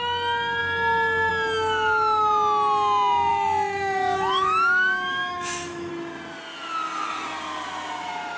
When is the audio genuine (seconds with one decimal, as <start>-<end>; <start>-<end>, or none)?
0.0-3.3; 5.9-8.4